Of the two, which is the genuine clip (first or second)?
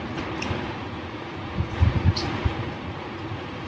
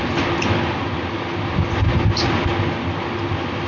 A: second